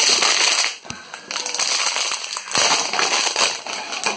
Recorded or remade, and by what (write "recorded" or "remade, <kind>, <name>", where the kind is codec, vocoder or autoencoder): recorded